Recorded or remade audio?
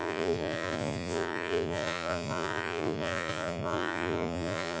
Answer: remade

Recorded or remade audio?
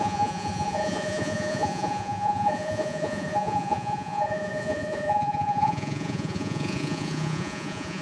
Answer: remade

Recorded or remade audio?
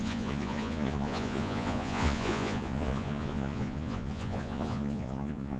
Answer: remade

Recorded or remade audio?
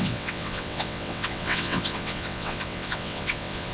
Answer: remade